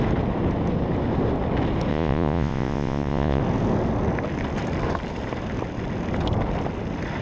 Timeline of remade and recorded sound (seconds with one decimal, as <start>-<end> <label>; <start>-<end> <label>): 0.0-1.9 recorded; 1.9-3.4 remade; 3.4-7.2 recorded